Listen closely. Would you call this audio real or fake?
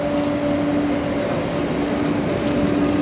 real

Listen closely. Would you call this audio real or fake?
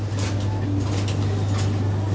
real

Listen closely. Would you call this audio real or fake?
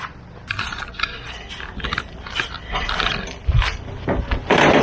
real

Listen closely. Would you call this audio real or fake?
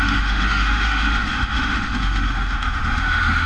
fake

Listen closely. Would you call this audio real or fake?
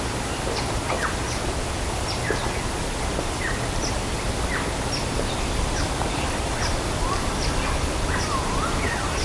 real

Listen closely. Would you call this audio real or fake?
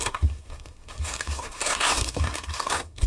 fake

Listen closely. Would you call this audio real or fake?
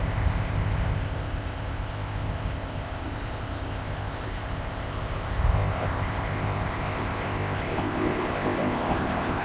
fake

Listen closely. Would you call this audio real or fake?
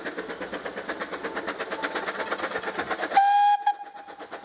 real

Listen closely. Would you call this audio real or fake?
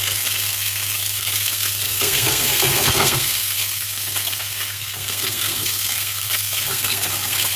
fake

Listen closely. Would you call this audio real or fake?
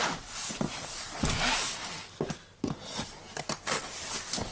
real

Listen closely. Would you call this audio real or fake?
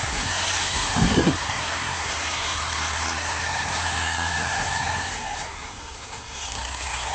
fake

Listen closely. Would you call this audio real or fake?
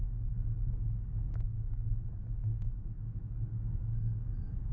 fake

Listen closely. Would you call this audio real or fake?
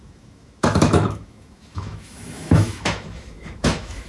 fake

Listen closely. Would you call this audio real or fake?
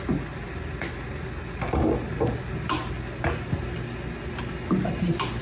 real